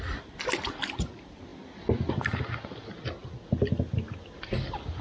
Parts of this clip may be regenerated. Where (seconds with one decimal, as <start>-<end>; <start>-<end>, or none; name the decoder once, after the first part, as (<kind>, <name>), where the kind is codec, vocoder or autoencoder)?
none